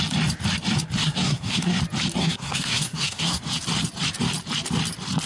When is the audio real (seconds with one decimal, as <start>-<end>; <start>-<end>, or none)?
0.0-1.0; 1.8-2.2; 3.4-5.3